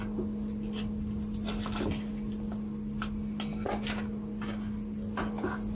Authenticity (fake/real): real